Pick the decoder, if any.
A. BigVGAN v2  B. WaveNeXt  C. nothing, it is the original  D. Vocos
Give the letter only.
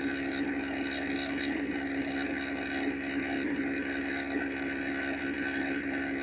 C